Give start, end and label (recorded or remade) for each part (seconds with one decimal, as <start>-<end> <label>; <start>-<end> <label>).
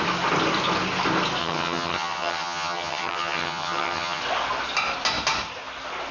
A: 0.0-1.4 recorded; 1.4-4.2 remade; 4.2-6.1 recorded